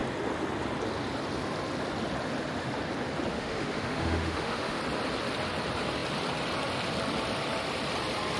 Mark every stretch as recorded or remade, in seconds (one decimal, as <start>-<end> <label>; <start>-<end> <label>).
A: 0.0-3.3 recorded; 3.3-4.8 remade; 4.8-8.4 recorded